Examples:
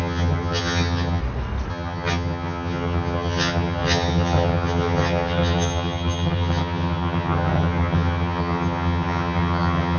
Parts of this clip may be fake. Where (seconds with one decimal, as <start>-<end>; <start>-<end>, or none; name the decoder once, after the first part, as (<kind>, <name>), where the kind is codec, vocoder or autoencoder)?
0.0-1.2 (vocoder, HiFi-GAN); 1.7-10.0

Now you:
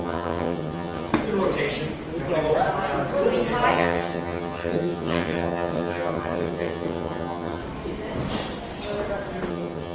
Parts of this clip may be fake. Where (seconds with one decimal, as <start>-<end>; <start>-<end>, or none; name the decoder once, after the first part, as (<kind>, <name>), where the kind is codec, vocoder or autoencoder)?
0.0-1.1 (vocoder, HiFi-GAN); 3.7-7.6; 9.5-9.9

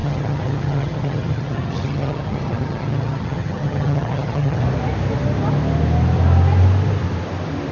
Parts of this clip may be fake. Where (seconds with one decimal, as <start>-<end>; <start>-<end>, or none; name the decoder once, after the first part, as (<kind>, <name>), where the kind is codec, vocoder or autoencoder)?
0.0-4.6 (vocoder, HiFi-GAN)

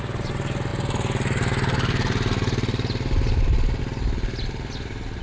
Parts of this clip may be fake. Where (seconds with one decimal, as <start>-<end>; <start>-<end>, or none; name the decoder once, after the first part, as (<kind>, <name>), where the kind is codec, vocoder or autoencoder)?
none

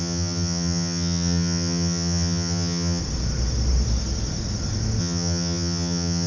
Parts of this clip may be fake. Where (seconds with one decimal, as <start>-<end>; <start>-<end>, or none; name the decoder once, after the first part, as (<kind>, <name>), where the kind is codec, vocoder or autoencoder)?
0.0-3.0 (vocoder, HiFi-GAN); 5.0-6.3